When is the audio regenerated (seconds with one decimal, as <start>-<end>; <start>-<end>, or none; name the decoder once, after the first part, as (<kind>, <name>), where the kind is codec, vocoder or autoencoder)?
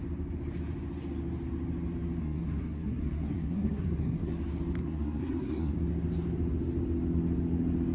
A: 2.2-4.3 (codec, SNAC); 4.8-5.7